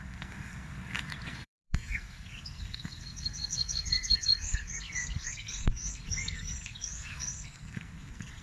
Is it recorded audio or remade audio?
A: remade